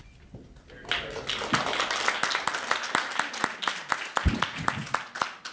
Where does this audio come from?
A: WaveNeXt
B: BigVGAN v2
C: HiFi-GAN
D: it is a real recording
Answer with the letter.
D